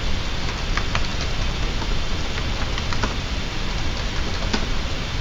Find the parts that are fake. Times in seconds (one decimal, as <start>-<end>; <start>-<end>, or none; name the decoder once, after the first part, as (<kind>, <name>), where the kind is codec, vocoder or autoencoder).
none